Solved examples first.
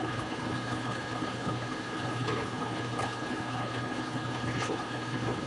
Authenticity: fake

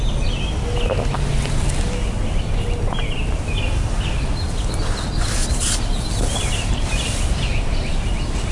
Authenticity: real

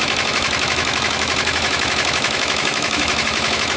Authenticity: fake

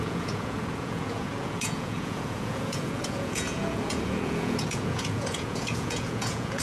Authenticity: fake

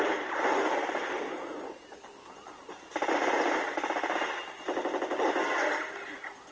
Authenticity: real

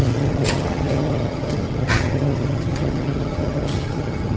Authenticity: fake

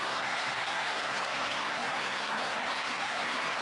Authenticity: fake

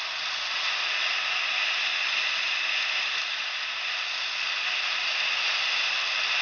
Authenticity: real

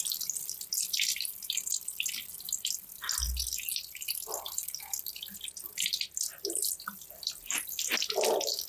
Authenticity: real